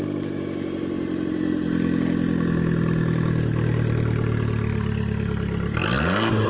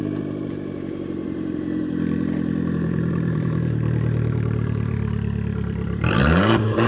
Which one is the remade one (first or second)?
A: second